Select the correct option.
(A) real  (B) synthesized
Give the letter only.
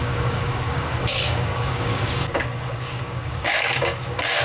B